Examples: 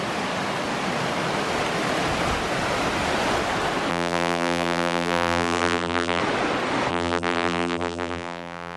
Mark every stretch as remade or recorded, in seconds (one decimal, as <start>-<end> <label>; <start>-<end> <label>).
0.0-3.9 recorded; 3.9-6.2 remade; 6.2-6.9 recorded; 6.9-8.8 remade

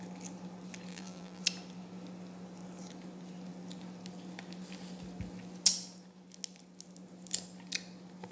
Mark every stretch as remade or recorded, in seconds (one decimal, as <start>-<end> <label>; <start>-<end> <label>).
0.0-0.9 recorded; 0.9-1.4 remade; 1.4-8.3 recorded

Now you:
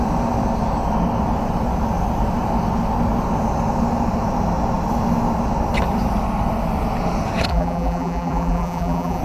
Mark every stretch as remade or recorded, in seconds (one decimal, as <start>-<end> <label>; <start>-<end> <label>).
0.0-7.5 recorded; 7.5-9.2 remade

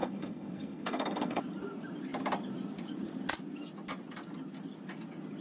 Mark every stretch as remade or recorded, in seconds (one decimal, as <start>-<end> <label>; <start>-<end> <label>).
0.0-1.4 remade; 1.4-5.4 recorded

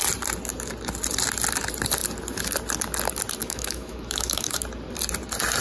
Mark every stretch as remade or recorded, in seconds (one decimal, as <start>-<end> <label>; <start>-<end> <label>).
0.0-3.4 recorded; 3.4-4.6 remade; 4.6-5.6 recorded

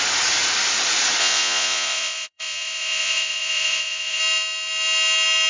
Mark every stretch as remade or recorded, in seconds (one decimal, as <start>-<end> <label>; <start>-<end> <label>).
0.0-1.2 recorded; 1.2-4.2 remade; 4.2-5.5 recorded

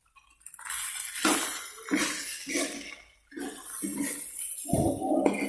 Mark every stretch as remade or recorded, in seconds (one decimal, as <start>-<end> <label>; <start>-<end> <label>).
0.0-3.9 recorded; 3.9-4.7 remade; 4.7-5.5 recorded